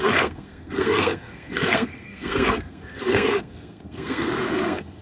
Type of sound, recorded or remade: remade